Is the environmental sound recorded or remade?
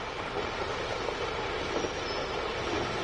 recorded